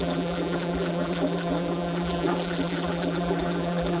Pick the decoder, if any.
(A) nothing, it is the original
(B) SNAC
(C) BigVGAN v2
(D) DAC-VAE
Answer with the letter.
C